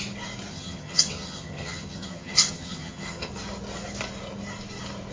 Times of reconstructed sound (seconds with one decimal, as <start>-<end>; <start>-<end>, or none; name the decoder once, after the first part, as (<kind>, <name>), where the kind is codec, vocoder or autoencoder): 0.5-3.3 (vocoder, HiFi-GAN)